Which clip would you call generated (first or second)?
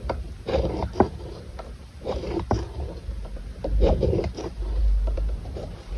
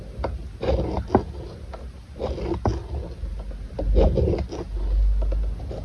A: first